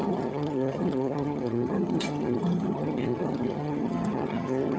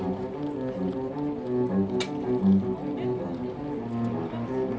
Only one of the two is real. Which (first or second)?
second